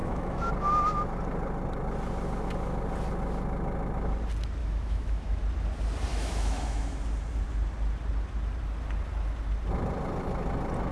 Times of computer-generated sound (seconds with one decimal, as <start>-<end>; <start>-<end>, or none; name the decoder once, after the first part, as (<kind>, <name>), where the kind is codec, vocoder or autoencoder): 0.0-0.5 (autoencoder, DAC-VAE); 4.6-5.4; 6.1-7.0